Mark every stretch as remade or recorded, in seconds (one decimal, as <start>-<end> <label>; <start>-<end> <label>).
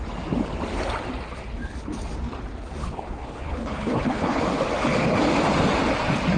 0.0-2.8 recorded; 2.8-4.4 remade; 4.4-6.4 recorded